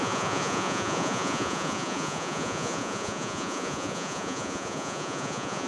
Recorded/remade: remade